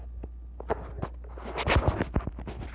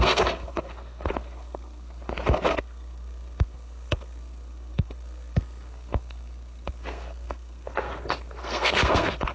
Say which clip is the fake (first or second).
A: second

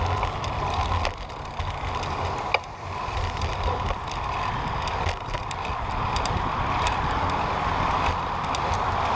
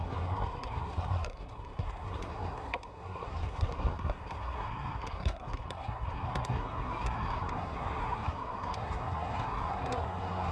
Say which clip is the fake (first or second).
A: second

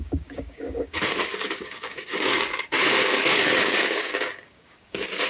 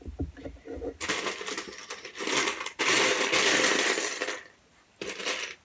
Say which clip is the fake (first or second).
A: first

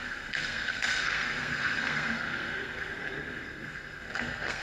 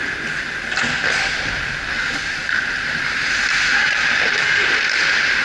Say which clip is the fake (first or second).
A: first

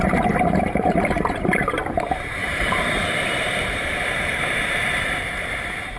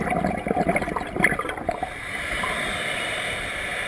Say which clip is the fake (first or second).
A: first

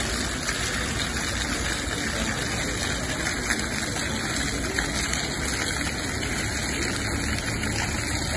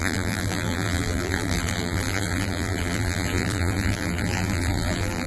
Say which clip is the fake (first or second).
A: second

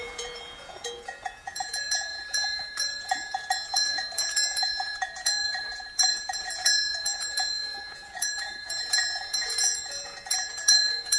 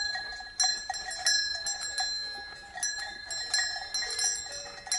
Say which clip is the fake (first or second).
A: first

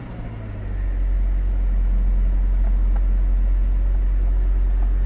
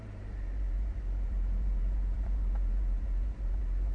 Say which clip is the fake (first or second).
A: second